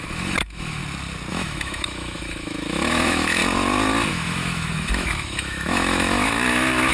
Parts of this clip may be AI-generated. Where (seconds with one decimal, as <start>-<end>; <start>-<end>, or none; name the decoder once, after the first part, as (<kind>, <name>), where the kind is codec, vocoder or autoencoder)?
0.0-0.8 (autoencoder, DAC-VAE); 1.3-3.4; 4.1-6.9